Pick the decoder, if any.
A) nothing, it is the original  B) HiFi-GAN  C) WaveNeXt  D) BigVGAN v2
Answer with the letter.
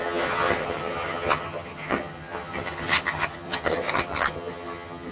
B